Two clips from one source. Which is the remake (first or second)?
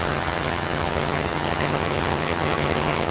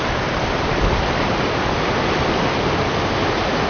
first